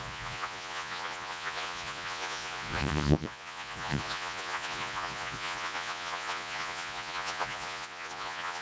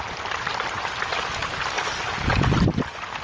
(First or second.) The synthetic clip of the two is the first